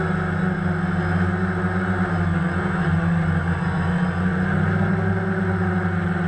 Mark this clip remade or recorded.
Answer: recorded